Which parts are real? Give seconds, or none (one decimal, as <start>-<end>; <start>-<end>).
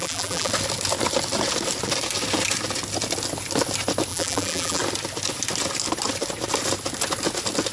0.5-4.1; 4.8-7.7